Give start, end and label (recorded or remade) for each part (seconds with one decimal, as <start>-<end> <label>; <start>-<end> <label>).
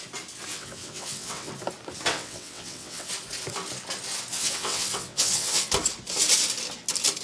0.0-0.5 recorded; 0.5-1.5 remade; 1.5-2.1 recorded; 2.1-3.1 remade; 3.1-4.3 recorded; 4.3-5.7 remade; 5.7-7.2 recorded